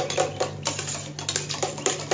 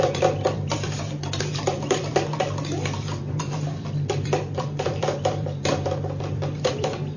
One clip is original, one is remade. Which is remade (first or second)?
second